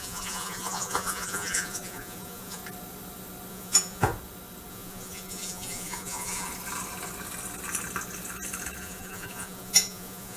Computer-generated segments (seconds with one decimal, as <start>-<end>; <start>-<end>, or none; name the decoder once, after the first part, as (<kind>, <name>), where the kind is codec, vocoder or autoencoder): 0.0-2.6 (vocoder, Vocos); 3.5-4.1; 4.7-6.5; 8.8-10.4